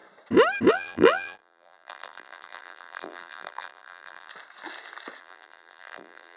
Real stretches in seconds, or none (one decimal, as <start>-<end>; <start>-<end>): 0.0-0.7; 4.3-5.2